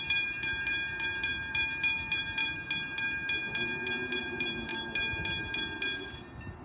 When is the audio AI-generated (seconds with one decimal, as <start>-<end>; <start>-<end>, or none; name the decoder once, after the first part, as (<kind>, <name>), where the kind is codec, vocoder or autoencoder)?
0.0-2.4 (vocoder, BigVGAN v2); 4.2-4.7